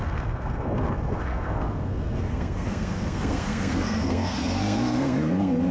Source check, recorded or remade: remade